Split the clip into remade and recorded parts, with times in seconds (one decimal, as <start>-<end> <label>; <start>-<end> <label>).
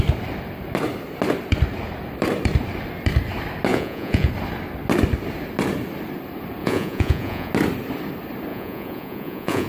0.0-3.7 recorded; 3.7-4.3 remade; 4.3-6.6 recorded; 6.6-7.5 remade; 7.5-8.5 recorded; 8.5-9.7 remade